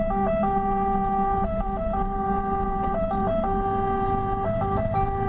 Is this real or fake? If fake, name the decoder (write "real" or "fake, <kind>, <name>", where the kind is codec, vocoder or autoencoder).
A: fake, vocoder, BigVGAN v2